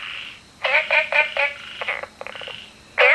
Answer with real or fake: real